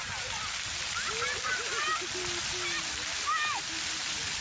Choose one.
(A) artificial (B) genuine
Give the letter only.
B